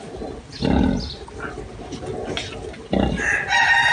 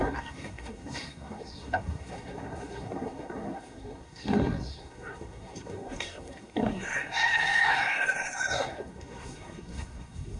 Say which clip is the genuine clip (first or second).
first